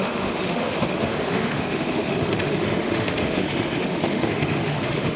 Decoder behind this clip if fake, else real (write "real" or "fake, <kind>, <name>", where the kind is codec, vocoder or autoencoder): fake, autoencoder, DAC-VAE